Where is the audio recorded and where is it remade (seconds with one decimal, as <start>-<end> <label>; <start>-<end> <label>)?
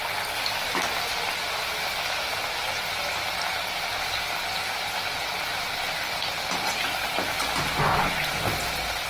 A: 0.0-9.1 recorded